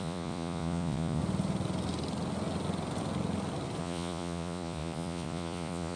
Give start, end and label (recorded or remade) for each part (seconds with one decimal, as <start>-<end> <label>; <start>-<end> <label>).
0.0-1.2 remade; 1.2-3.8 recorded; 3.8-6.0 remade